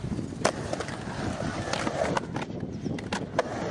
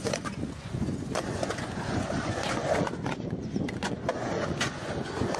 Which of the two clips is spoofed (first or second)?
second